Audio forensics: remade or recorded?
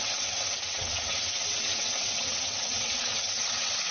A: remade